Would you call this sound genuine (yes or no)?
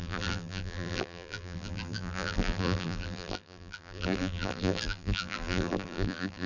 no